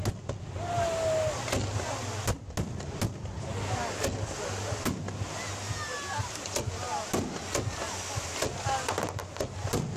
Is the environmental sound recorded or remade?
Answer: recorded